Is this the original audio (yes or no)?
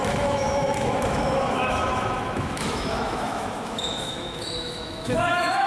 no